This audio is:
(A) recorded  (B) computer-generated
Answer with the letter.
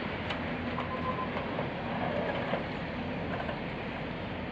A